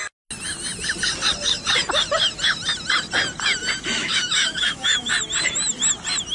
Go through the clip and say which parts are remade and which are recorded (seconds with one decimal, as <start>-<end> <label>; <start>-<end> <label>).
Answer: 0.0-4.0 recorded; 4.0-5.1 remade; 5.1-6.3 recorded